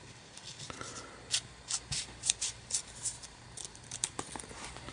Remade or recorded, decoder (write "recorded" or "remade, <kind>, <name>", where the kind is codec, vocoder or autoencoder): recorded